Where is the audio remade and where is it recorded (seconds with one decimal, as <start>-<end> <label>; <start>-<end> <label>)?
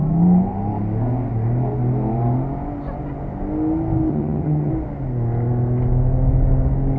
0.0-4.1 recorded; 4.1-4.7 remade; 4.7-7.0 recorded